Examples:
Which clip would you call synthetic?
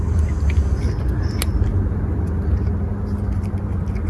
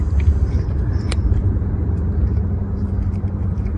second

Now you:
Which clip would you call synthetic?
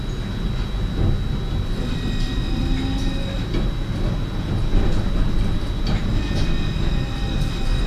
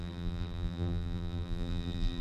second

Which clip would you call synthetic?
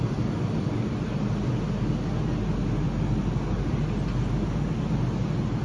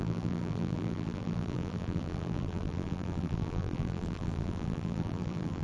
second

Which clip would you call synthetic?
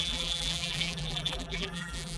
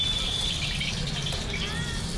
first